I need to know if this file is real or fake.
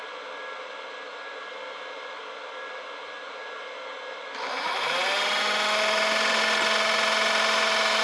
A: real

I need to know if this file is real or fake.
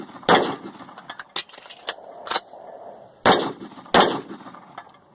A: real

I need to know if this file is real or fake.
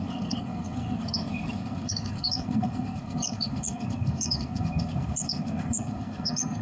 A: fake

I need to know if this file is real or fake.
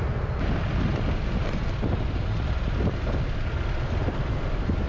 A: real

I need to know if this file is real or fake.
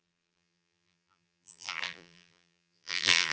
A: fake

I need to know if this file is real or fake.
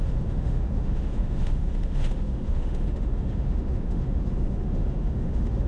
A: fake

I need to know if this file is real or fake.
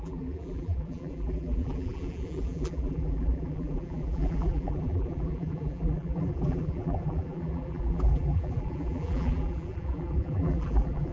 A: fake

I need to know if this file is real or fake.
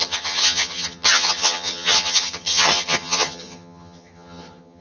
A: fake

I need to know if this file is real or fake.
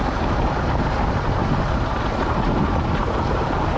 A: fake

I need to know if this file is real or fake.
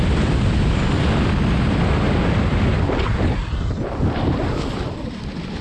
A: real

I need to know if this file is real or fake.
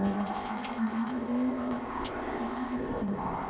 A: fake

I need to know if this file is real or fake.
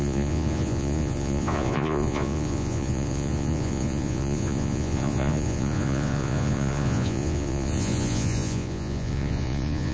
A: fake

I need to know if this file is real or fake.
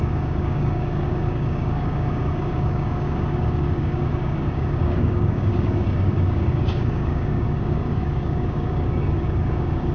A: fake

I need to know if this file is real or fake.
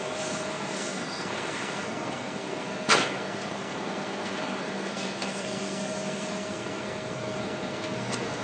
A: fake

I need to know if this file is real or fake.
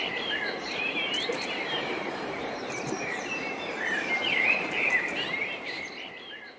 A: fake